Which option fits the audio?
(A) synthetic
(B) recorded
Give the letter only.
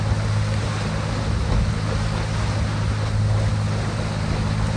B